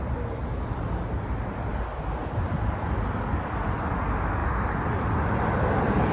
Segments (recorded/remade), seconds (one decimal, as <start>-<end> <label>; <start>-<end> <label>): 0.0-6.1 recorded